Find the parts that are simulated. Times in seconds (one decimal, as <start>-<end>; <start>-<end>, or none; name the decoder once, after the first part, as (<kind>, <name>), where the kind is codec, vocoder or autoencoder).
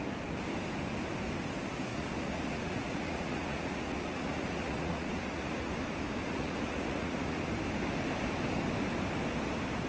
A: 1.9-5.7 (vocoder, Vocos); 6.2-7.4